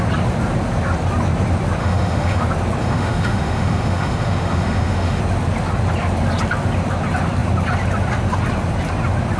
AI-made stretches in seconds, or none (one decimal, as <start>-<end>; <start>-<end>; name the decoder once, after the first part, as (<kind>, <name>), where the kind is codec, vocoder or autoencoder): 1.8-2.4 (autoencoder, DAC-VAE); 2.8-5.2